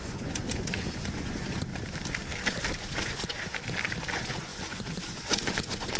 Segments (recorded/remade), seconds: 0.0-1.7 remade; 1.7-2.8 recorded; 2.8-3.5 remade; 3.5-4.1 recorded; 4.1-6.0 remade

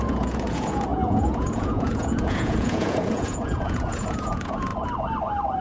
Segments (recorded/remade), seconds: 0.0-4.7 remade; 4.7-5.6 recorded

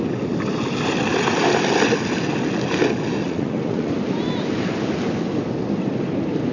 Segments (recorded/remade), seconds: 0.0-3.2 recorded; 3.2-3.9 remade; 3.9-6.5 recorded

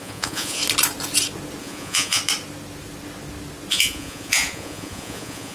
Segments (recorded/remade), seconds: 0.0-0.6 remade; 0.6-1.6 recorded; 1.6-2.2 remade; 2.2-3.7 recorded; 3.7-5.5 remade

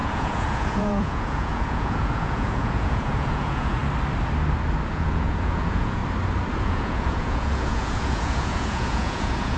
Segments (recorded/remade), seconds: 0.0-3.8 remade; 3.8-4.9 recorded; 4.9-6.0 remade; 6.0-6.5 recorded; 6.5-9.6 remade

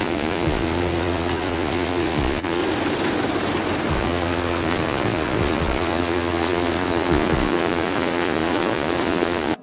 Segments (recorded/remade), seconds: 0.0-2.6 remade; 2.6-3.9 recorded; 3.9-9.6 remade

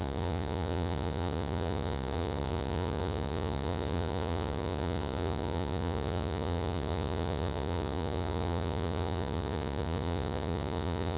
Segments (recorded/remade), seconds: 0.0-11.2 remade

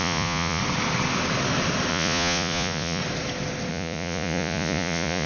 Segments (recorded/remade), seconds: 0.0-0.6 remade; 0.6-1.9 recorded; 1.9-3.0 remade; 3.0-3.7 recorded; 3.7-5.3 remade